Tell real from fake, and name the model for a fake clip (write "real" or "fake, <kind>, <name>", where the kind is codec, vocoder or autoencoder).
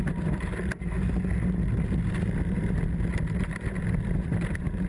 real